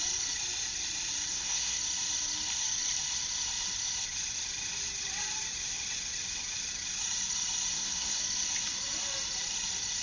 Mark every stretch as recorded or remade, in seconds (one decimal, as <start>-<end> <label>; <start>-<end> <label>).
0.0-1.3 recorded; 1.3-1.8 remade; 1.8-7.7 recorded; 7.7-8.2 remade; 8.2-10.0 recorded